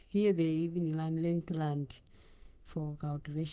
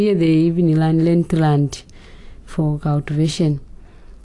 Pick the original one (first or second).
second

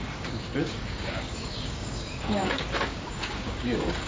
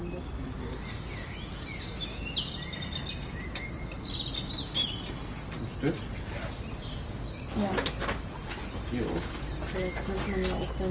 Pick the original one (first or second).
second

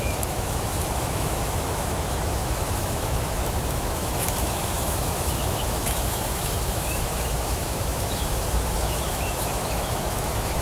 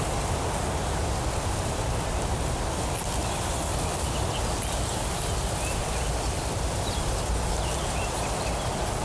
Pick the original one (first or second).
second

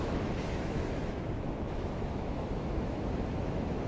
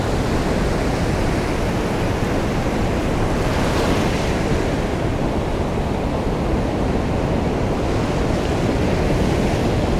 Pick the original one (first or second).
second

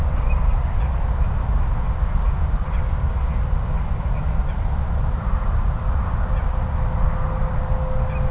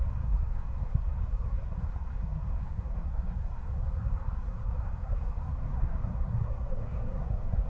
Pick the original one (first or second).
first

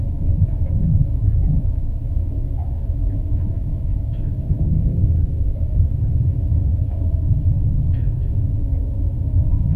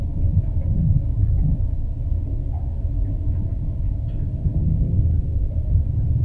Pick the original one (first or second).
second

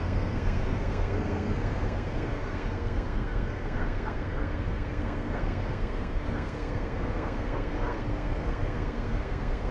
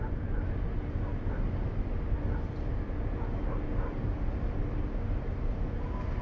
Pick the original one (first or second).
second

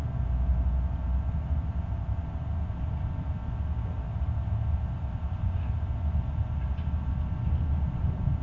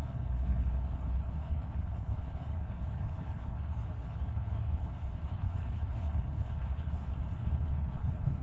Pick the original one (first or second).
first